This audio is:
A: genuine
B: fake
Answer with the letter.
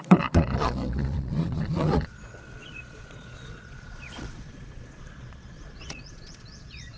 B